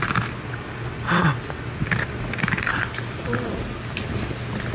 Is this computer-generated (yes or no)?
no